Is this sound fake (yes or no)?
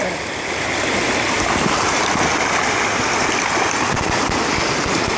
no